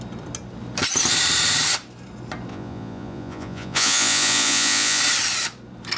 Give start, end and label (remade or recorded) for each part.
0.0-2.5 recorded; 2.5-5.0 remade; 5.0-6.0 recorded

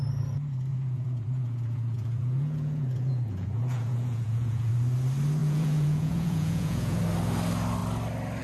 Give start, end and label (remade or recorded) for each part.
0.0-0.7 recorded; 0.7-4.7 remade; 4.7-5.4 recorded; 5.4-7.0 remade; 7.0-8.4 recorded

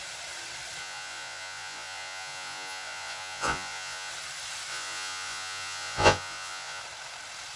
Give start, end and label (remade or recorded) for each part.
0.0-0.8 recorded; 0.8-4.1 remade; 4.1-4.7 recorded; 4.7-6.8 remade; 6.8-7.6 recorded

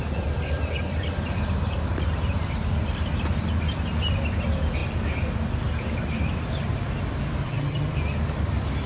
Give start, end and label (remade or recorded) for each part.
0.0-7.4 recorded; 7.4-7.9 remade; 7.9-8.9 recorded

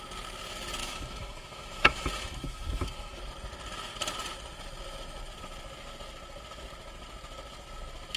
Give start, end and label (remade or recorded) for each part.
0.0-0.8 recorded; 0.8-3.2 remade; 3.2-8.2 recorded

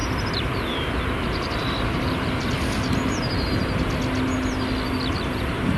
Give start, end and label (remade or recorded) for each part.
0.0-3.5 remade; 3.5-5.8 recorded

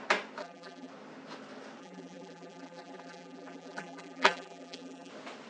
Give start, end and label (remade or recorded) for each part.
0.0-0.4 recorded; 0.4-0.9 remade; 0.9-1.8 recorded; 1.8-5.1 remade; 5.1-5.5 recorded